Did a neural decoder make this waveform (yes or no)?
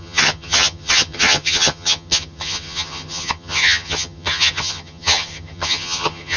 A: yes